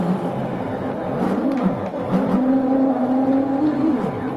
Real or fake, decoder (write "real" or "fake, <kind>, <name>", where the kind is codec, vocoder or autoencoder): real